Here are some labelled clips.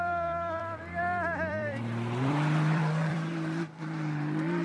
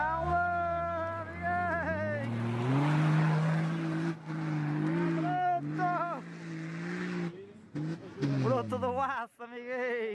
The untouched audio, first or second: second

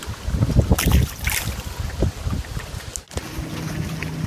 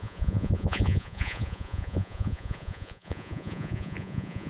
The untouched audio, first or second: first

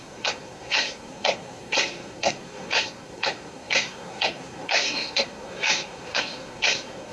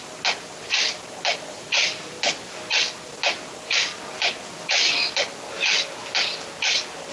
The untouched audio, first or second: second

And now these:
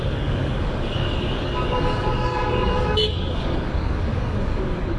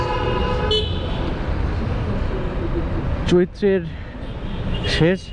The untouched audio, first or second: second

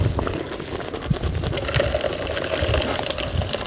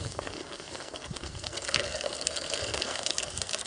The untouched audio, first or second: first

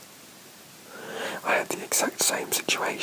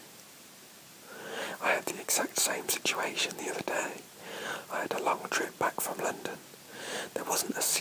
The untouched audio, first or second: first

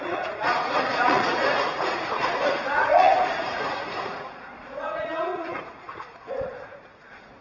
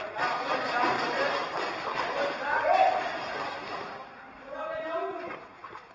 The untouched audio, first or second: second